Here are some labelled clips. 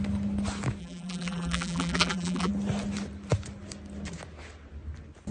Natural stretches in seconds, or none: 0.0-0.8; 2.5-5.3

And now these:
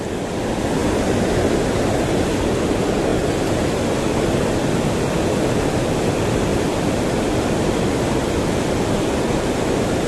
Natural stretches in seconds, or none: 0.8-2.6; 3.1-4.2

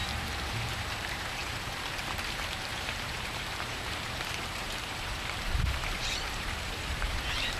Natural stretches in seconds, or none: none

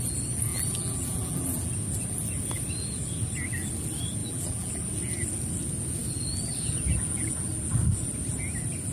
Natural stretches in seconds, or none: 0.0-0.5; 1.7-4.2; 4.7-8.9